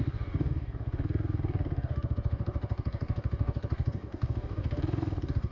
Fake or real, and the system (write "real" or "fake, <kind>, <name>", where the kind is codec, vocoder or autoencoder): fake, codec, DAC